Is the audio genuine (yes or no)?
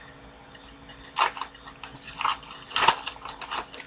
yes